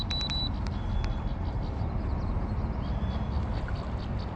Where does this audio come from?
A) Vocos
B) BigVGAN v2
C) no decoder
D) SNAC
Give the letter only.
C